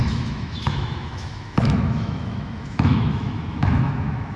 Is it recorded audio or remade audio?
remade